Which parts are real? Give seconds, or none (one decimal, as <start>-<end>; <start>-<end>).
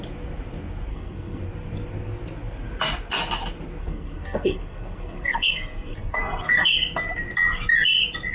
0.0-0.9; 1.4-3.8; 6.7-8.3